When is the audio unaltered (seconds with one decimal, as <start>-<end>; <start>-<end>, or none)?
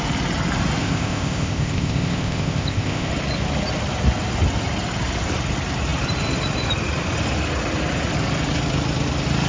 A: 0.0-0.8; 3.1-9.5